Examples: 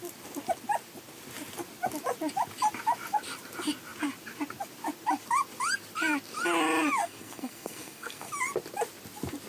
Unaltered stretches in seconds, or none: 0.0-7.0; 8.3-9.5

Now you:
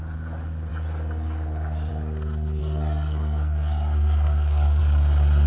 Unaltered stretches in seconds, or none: 0.0-2.6; 4.8-5.5

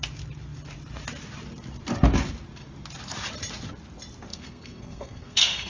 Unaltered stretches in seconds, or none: 0.0-4.3

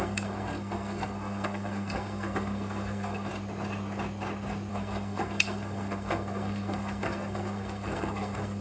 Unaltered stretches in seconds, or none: 3.3-4.7

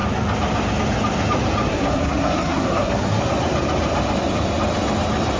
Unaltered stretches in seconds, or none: 0.0-1.7; 3.2-5.4